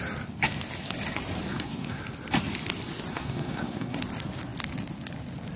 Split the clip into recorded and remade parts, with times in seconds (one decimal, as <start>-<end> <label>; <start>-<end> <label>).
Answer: 0.0-1.5 recorded; 1.5-2.0 remade; 2.0-3.1 recorded; 3.1-4.0 remade; 4.0-5.6 recorded